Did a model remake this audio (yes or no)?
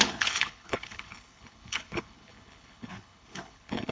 yes